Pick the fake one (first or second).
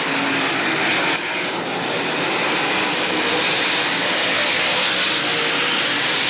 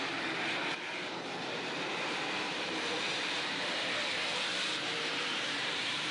second